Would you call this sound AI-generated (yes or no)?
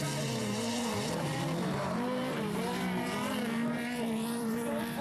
yes